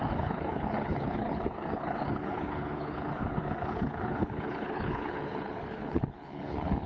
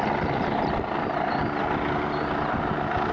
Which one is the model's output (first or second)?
first